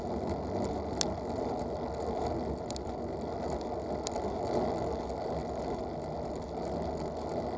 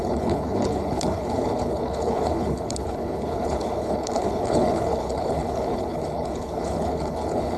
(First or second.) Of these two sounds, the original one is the first